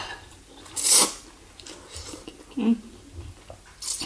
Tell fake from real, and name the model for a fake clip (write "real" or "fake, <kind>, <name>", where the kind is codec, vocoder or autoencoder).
fake, vocoder, BigVGAN v2